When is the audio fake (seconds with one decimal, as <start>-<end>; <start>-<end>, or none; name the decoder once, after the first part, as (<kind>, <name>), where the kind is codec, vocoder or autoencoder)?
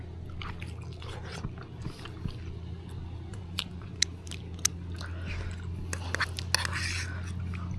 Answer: 3.3-4.0 (vocoder, Vocos)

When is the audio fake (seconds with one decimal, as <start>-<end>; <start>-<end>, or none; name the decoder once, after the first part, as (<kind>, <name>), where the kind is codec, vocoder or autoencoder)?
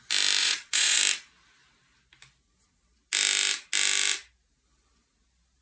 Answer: 0.4-1.0 (vocoder, Vocos)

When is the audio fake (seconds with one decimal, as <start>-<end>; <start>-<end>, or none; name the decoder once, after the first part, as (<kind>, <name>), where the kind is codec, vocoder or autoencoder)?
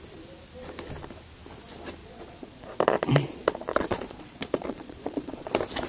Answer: 2.0-5.5 (vocoder, Vocos)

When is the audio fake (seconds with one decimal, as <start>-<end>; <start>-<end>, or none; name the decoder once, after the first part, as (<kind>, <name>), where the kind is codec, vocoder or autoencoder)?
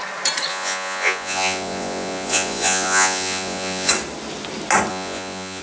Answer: 0.5-3.9 (vocoder, Vocos); 4.9-5.6